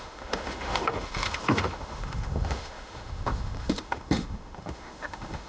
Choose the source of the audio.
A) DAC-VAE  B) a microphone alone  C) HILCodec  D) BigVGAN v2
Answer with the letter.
A